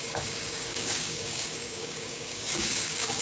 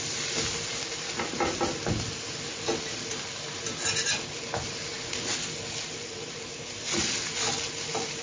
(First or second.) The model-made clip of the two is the first